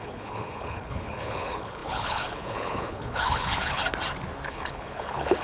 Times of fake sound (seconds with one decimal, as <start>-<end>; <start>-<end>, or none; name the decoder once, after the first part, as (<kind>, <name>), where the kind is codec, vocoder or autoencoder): 0.0-3.8 (codec, HILCodec); 4.5-5.4